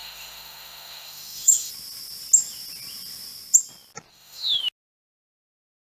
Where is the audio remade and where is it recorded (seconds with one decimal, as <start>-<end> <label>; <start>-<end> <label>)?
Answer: 0.0-1.7 remade; 1.7-4.1 recorded; 4.1-4.6 remade; 4.6-5.9 recorded